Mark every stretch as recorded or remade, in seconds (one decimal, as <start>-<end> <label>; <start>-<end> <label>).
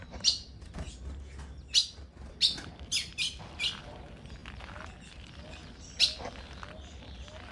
0.0-7.5 recorded